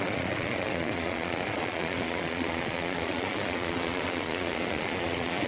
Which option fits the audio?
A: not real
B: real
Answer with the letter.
A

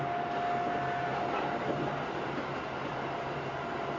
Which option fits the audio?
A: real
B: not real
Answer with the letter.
A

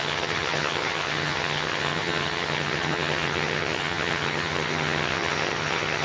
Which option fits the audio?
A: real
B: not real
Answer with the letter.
B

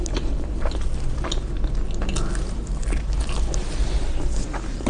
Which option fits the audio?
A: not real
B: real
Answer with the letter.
B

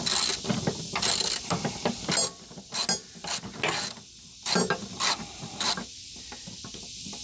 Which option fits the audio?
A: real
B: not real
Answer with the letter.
A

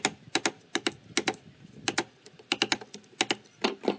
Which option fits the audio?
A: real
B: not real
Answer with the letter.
A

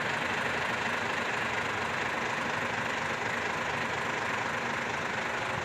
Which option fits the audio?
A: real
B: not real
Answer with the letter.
A